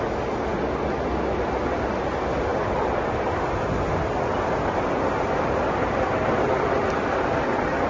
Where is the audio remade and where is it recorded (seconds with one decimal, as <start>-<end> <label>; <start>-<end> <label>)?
0.0-7.9 recorded